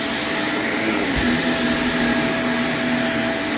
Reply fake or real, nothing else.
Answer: real